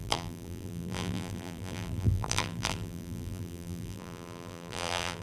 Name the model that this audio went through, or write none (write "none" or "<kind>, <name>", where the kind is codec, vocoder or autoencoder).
vocoder, BigVGAN v2